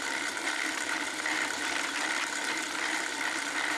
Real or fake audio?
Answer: fake